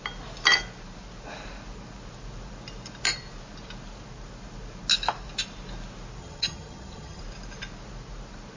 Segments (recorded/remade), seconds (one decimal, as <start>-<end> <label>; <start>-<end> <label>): 0.0-6.2 recorded; 6.2-7.2 remade; 7.2-8.6 recorded